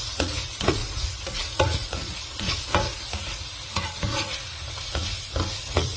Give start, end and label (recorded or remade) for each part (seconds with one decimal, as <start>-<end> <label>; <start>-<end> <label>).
0.0-5.0 remade; 5.0-5.6 recorded; 5.6-6.0 remade